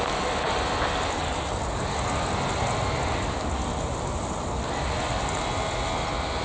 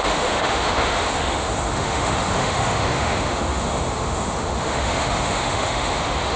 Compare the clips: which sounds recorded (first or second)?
first